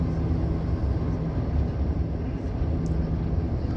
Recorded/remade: recorded